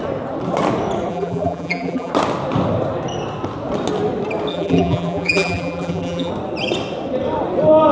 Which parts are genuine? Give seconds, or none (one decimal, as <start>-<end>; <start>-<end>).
0.0-1.1; 2.1-4.5; 6.3-7.9